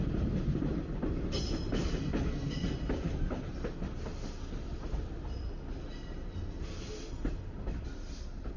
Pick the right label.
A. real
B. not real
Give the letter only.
A